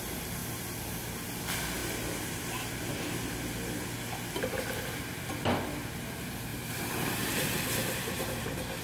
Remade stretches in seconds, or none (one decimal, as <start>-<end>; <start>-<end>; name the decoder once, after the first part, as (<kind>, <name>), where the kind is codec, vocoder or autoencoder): 0.4-1.4 (vocoder, BigVGAN v2); 1.8-2.4; 6.5-8.4